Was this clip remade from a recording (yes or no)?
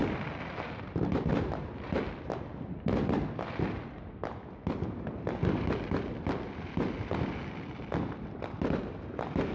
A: no